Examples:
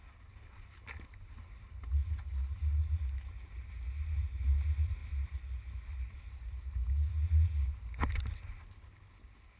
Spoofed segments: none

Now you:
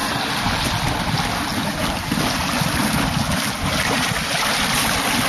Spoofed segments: none

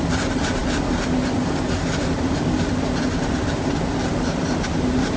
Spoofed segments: none

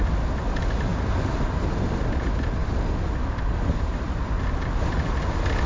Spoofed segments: none

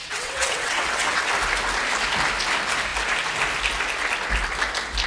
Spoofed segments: 0.0-1.3 (vocoder, WaveNeXt)

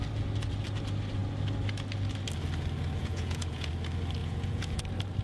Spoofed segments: 3.0-3.7 (vocoder, Vocos); 4.2-4.8

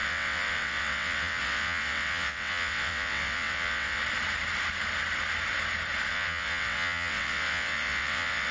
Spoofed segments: 0.0-4.0 (vocoder, WaveNeXt); 6.1-8.5

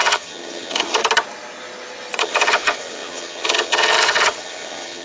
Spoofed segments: 0.0-1.0 (vocoder, HiFi-GAN); 2.2-5.0